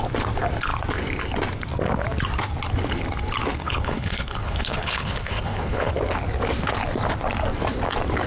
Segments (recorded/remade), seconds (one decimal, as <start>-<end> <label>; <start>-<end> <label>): 0.0-3.6 recorded; 3.6-5.9 remade; 5.9-8.3 recorded